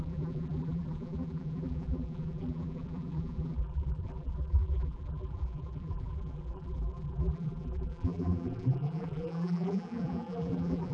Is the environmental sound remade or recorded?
remade